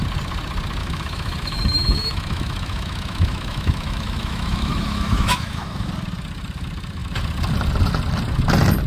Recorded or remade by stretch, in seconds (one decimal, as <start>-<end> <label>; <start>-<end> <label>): 0.0-0.8 recorded; 0.8-5.9 remade; 5.9-8.9 recorded